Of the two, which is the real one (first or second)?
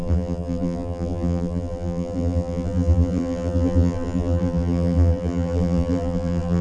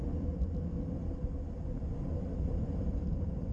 second